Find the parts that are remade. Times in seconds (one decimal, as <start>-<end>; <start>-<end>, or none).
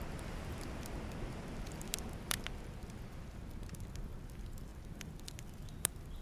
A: none